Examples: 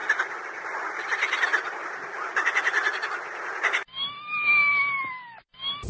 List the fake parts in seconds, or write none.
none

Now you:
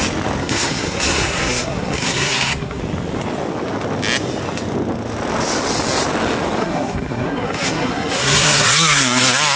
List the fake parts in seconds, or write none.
0.4-2.8 (codec, SNAC); 6.6-9.2